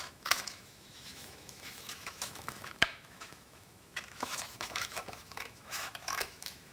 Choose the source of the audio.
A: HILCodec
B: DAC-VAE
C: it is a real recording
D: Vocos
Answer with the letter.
B